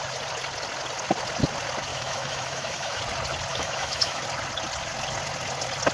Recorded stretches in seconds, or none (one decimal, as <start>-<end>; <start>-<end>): 0.0-1.9; 3.0-3.5; 4.2-5.9